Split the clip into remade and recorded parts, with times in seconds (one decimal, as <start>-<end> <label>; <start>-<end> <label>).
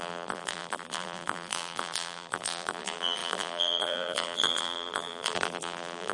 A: 0.0-6.1 remade